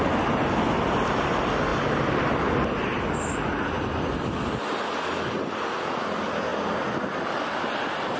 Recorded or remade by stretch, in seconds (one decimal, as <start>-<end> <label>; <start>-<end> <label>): 0.0-8.2 recorded